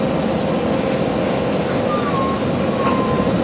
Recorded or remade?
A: recorded